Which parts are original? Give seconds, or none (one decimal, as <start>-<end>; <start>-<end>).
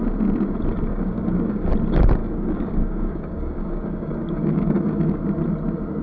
0.0-0.9; 1.7-2.2; 5.2-6.0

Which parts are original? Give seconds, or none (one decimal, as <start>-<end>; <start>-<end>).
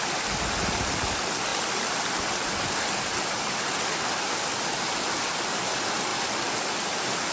0.0-7.3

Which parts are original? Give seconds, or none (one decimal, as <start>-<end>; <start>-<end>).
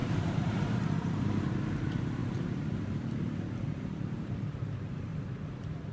2.2-3.7; 5.1-5.9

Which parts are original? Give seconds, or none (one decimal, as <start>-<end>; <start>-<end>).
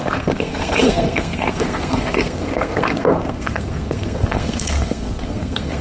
none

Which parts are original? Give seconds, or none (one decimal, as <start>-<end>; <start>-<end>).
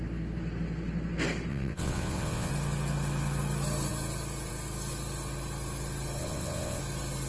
0.0-1.5; 2.5-6.2; 6.8-7.3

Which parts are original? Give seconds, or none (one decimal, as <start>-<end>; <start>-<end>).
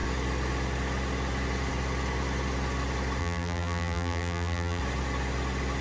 0.0-3.2; 4.8-5.8